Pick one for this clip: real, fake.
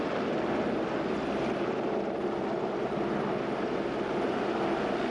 real